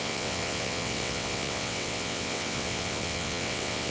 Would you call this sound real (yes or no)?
no